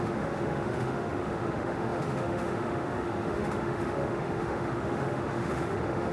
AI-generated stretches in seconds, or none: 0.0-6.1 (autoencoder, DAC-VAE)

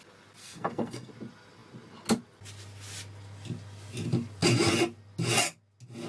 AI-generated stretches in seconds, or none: 0.4-1.1 (codec, SNAC)

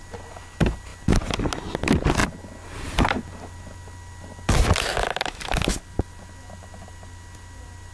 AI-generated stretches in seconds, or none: none

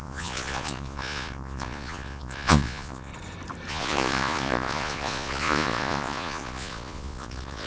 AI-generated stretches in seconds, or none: 0.0-3.1 (vocoder, Vocos); 3.7-7.7

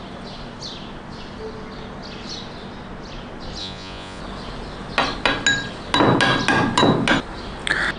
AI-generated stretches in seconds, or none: 3.6-4.2 (vocoder, Vocos)

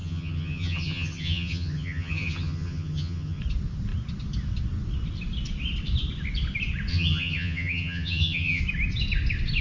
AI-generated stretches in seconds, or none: 0.0-3.4 (vocoder, HiFi-GAN); 6.9-8.6

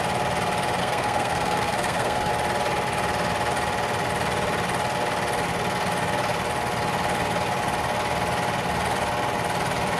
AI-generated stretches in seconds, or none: 0.8-2.3 (codec, SNAC)

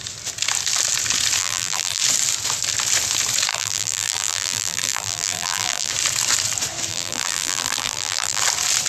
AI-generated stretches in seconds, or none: 1.4-2.0 (vocoder, BigVGAN v2); 3.5-5.9; 6.9-8.4